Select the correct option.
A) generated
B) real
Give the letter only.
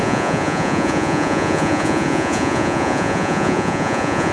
A